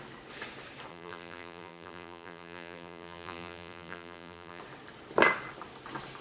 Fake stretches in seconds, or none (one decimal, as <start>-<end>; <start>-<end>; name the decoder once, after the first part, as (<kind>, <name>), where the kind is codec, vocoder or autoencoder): 0.9-4.6 (vocoder, BigVGAN v2)